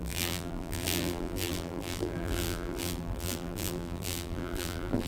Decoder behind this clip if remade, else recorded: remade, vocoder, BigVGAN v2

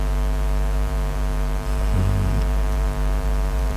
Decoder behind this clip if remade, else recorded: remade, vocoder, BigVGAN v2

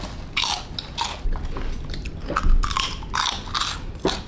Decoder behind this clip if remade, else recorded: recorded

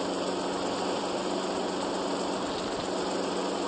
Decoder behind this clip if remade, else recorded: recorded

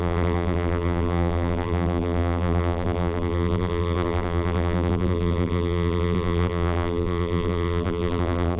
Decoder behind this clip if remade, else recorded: remade, vocoder, BigVGAN v2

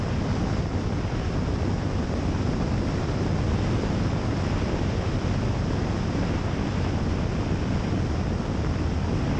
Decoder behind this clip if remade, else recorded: recorded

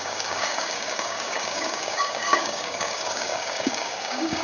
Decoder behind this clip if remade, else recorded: remade, codec, DAC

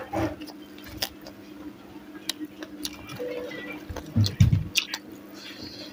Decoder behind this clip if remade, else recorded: recorded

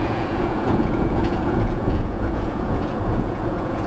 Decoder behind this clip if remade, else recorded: remade, vocoder, Vocos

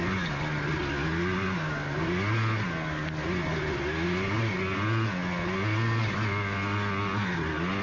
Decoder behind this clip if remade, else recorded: recorded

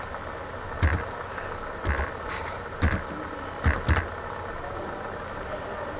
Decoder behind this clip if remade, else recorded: recorded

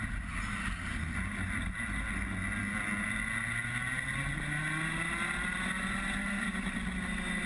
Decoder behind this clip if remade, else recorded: recorded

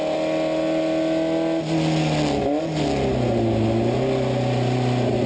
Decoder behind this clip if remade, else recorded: recorded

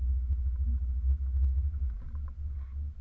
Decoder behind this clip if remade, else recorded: recorded